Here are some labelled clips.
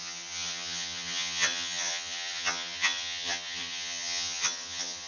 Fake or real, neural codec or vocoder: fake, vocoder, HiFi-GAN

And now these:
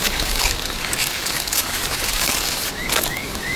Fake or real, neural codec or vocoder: fake, codec, DAC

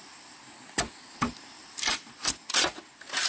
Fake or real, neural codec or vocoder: real